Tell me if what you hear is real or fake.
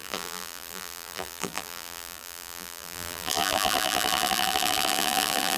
fake